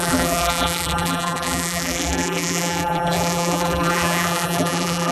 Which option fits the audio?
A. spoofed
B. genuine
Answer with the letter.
A